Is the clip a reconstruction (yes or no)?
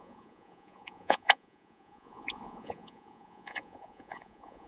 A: yes